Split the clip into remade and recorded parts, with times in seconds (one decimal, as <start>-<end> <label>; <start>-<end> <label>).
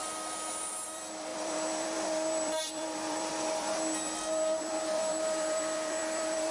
0.0-0.7 recorded; 0.7-6.5 remade